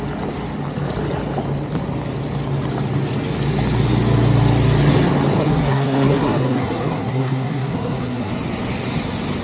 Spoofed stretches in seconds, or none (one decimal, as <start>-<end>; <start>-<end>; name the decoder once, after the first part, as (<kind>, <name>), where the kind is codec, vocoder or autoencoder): 5.4-8.3 (codec, SNAC)